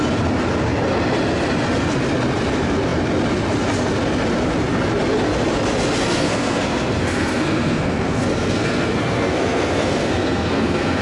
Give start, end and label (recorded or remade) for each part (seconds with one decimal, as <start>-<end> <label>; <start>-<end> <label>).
0.0-6.1 recorded; 6.1-11.0 remade